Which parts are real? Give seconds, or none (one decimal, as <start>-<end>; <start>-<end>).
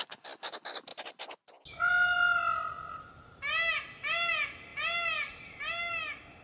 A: 0.0-6.4